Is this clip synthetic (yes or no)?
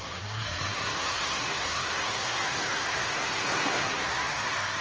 yes